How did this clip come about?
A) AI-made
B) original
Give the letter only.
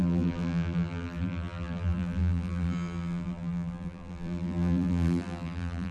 A